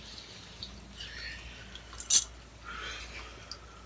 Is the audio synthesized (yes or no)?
no